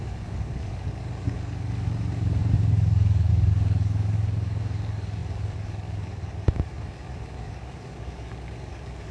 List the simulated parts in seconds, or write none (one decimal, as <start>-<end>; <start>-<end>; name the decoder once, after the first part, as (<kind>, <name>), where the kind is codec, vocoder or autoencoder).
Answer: 0.0-9.1 (codec, DAC)